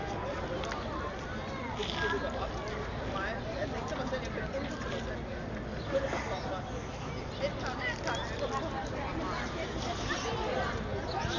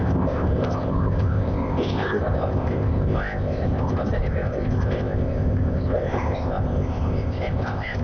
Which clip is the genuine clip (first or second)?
first